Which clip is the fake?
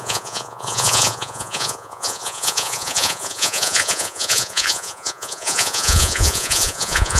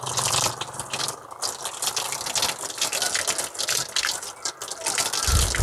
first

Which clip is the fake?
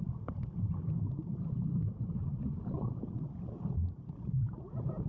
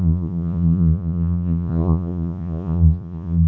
second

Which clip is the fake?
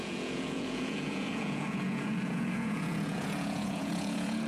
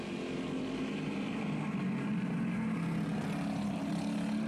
first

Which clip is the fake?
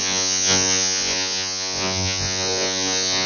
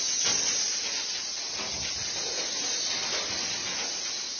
first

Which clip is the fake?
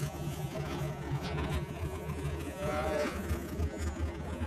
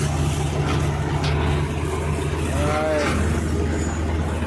first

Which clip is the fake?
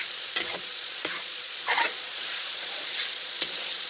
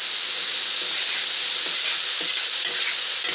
first